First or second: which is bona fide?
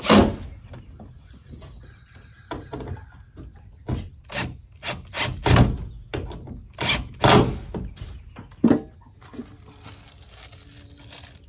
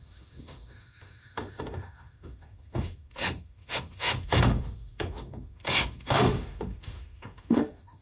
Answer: first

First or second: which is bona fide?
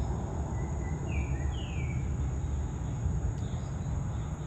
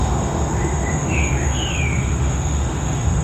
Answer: first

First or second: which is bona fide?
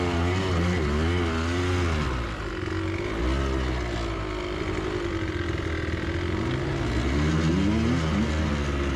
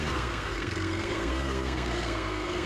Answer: first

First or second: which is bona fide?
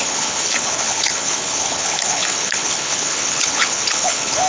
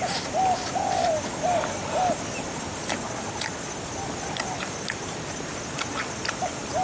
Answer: second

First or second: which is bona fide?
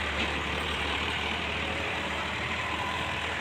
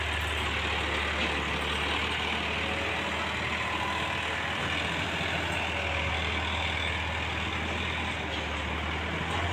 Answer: second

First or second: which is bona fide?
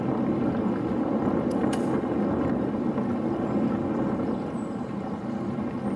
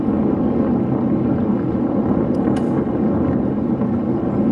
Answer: second